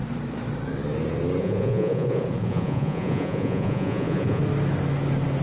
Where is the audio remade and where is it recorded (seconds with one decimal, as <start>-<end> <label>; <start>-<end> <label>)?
0.0-1.4 recorded; 1.4-4.4 remade; 4.4-5.4 recorded